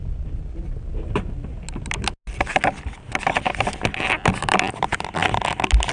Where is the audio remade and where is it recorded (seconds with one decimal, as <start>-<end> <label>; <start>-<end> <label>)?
0.0-0.9 remade; 0.9-2.6 recorded; 2.6-4.9 remade; 4.9-5.9 recorded